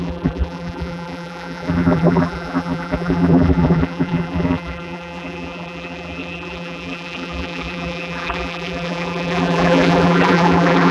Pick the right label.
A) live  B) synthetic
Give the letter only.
B